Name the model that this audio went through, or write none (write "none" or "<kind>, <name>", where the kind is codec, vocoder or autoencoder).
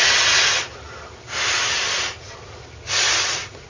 none